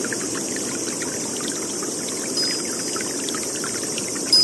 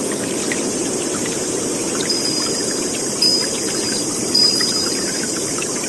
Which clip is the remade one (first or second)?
second